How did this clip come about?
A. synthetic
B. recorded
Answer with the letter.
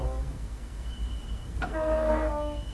A